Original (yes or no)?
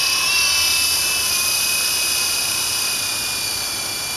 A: yes